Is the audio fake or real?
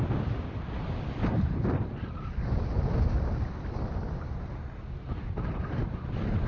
real